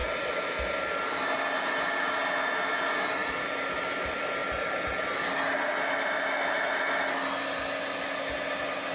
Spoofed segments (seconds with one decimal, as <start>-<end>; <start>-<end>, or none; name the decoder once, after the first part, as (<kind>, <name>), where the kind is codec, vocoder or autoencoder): none